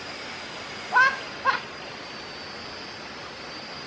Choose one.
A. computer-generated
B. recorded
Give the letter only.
B